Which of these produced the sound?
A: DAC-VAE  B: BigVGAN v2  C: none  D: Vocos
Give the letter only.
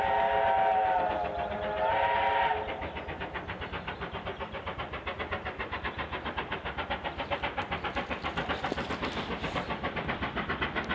C